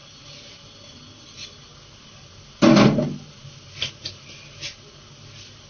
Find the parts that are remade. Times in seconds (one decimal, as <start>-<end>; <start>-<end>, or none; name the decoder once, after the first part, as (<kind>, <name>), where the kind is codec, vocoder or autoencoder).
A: none